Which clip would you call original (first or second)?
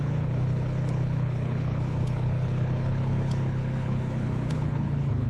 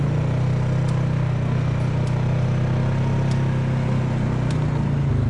second